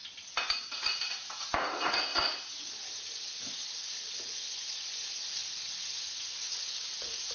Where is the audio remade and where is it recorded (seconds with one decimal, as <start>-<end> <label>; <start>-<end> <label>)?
0.0-1.5 recorded; 1.5-2.1 remade; 2.1-6.5 recorded; 6.5-7.3 remade

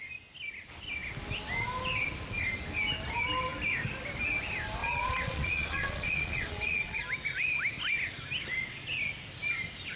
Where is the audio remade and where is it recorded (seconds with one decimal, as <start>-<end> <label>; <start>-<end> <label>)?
0.0-4.8 recorded; 4.8-7.0 remade; 7.0-10.0 recorded

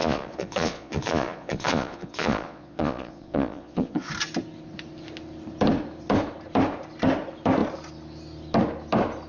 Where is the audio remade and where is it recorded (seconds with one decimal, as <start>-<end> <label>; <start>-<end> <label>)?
0.0-4.1 remade; 4.1-9.3 recorded